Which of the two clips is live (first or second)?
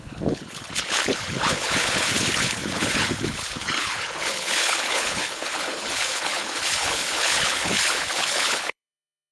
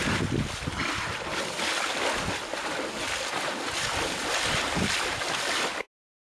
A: second